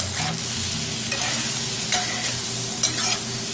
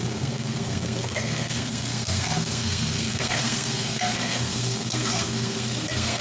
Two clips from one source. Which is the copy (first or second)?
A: second